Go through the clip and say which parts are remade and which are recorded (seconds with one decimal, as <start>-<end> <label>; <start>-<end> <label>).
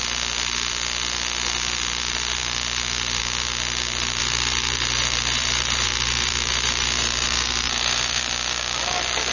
0.0-4.2 recorded; 4.2-8.2 remade; 8.2-9.3 recorded